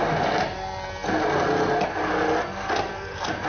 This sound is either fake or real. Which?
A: real